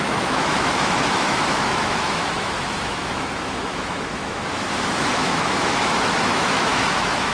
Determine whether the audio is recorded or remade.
remade